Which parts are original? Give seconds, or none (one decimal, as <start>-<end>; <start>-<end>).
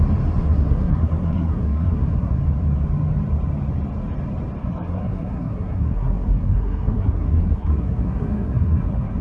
0.0-0.4; 2.4-4.6